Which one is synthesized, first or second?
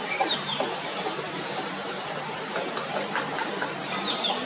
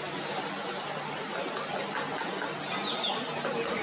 first